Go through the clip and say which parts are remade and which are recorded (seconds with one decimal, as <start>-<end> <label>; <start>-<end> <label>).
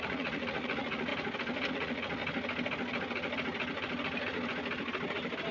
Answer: 0.0-1.1 remade; 1.1-1.7 recorded; 1.7-2.2 remade; 2.2-5.5 recorded